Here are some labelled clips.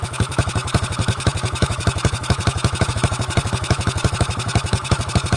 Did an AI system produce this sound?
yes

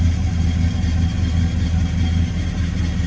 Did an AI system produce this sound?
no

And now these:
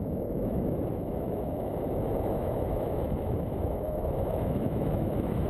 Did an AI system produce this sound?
yes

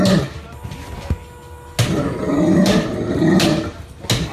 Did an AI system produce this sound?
no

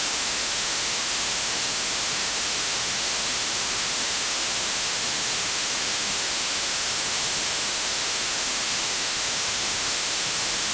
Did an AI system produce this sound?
yes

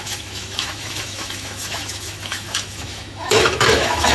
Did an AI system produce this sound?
yes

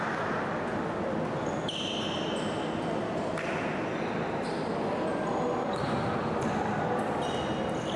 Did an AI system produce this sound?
no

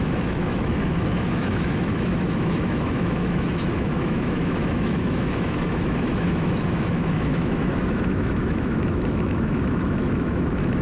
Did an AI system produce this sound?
yes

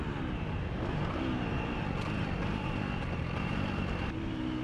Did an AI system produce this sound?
no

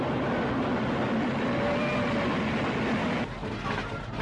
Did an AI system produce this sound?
no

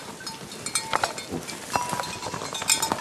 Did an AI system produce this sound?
no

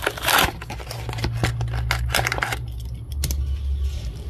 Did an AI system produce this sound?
no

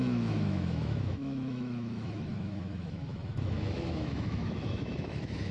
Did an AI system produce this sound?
yes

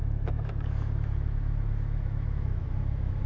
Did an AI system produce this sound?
yes